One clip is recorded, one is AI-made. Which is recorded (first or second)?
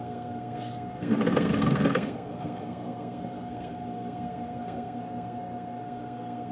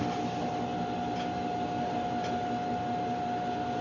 second